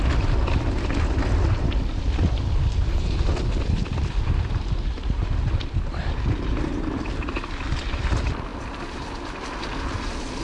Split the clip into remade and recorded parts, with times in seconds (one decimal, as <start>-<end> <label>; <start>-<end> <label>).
0.0-10.4 recorded